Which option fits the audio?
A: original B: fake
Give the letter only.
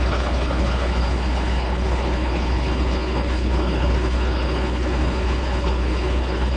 B